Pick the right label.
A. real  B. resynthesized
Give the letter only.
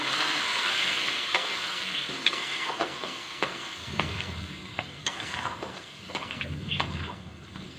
B